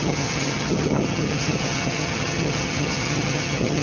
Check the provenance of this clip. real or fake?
fake